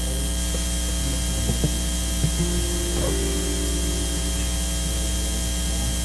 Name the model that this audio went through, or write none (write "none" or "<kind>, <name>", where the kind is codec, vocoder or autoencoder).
none